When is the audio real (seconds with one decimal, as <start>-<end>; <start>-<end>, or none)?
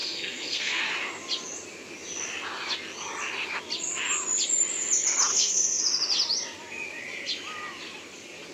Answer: 0.8-5.3; 5.8-8.5